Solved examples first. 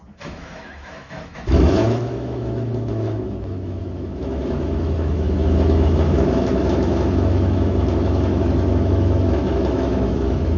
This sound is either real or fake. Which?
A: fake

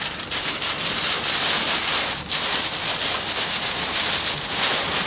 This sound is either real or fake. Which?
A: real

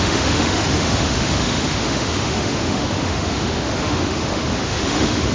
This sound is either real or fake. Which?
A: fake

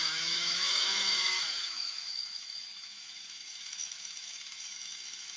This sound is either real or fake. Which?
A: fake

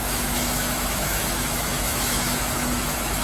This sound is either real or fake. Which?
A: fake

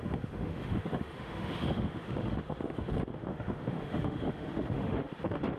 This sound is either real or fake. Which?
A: fake